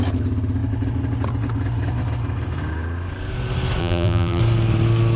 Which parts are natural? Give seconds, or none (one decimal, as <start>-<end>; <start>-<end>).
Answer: 0.0-3.8; 4.4-5.2